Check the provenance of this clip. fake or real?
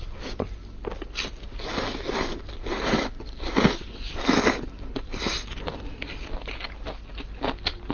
real